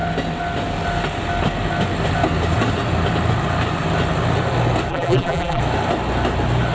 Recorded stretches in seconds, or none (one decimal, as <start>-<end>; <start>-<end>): 0.0-4.9; 5.6-6.7